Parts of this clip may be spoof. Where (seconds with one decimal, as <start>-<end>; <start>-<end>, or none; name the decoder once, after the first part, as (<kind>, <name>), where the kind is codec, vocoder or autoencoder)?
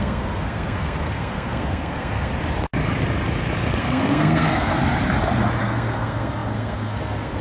0.0-2.3 (codec, SNAC); 3.8-4.7; 5.6-7.4